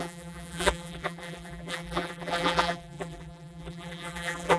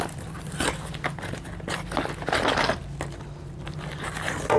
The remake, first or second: first